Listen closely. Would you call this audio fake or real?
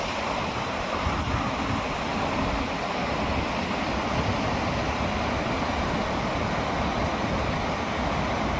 real